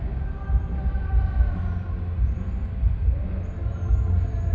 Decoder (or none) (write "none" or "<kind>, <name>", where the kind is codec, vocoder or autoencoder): none